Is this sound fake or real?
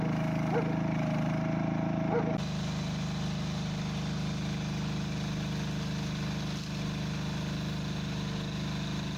real